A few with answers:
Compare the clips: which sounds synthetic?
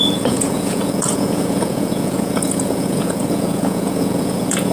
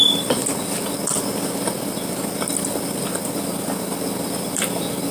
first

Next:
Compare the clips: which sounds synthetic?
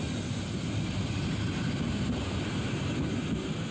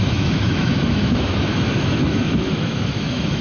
second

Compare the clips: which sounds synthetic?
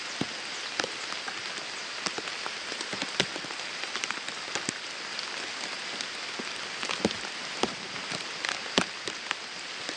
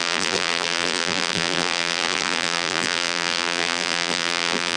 second